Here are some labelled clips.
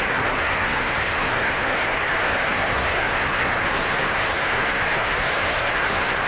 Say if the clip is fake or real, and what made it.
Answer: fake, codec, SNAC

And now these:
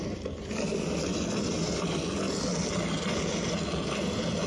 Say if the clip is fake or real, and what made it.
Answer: real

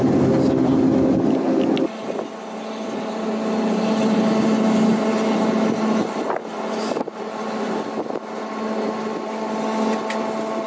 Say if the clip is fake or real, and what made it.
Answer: real